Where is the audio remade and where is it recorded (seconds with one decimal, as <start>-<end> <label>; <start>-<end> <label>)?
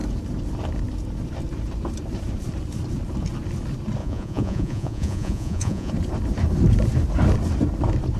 0.0-4.0 recorded; 4.0-5.9 remade; 5.9-8.2 recorded